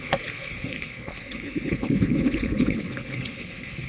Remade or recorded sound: remade